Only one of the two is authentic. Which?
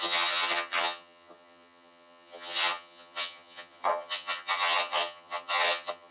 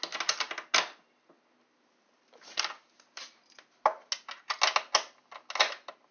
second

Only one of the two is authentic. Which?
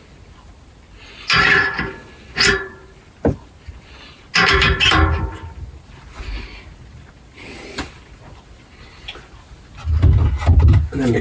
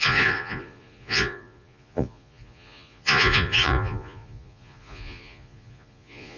first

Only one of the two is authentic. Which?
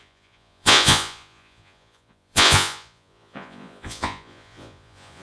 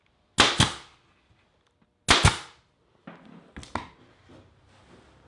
second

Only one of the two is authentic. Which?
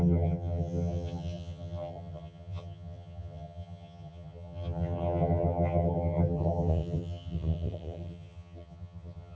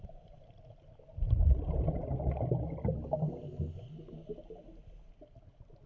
second